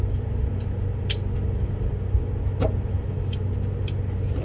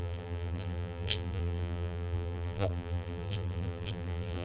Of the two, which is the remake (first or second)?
second